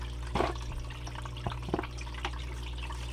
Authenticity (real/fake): real